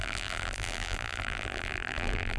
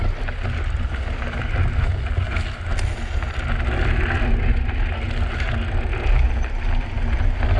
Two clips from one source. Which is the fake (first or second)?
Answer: first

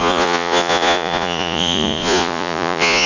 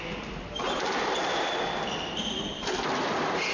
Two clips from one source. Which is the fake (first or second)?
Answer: first